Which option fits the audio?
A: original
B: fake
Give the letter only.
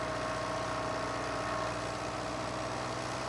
A